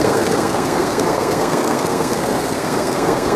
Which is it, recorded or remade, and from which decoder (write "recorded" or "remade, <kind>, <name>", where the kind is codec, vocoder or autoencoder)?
remade, codec, SNAC